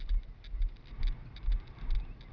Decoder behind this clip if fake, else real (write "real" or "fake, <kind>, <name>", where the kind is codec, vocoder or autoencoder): real